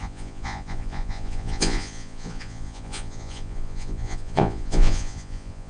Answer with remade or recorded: remade